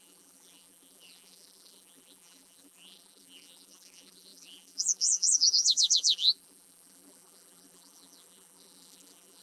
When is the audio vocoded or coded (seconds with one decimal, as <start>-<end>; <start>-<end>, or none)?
0.0-9.4